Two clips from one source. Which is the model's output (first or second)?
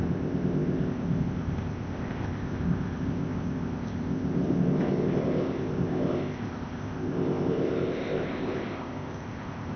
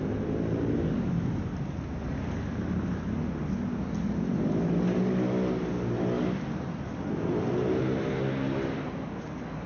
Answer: first